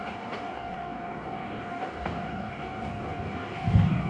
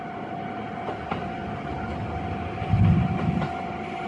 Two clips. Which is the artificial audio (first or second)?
first